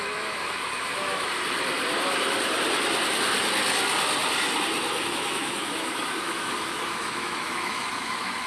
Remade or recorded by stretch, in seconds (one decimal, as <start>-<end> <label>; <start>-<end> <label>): 0.0-1.3 remade; 1.3-5.0 recorded; 5.0-8.5 remade